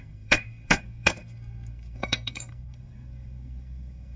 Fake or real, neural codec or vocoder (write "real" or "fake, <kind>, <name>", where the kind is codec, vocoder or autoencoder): fake, codec, SNAC